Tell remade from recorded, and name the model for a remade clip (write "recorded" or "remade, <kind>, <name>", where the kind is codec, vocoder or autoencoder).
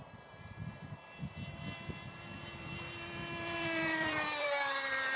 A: remade, vocoder, BigVGAN v2